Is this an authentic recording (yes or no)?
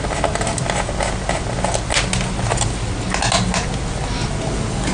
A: yes